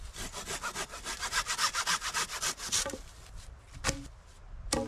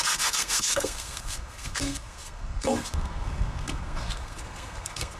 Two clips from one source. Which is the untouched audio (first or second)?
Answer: first